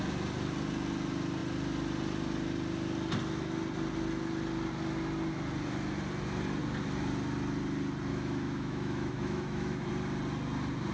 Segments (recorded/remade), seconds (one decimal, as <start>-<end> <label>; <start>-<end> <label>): 0.0-8.1 recorded; 8.1-9.9 remade; 9.9-10.9 recorded